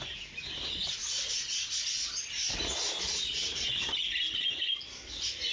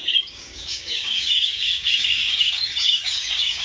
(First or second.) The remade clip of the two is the second